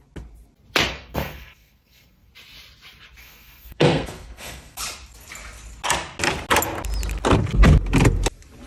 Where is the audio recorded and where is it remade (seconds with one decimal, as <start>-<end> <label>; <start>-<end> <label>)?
0.0-0.9 recorded; 0.9-2.3 remade; 2.3-3.2 recorded; 3.2-4.8 remade; 4.8-8.7 recorded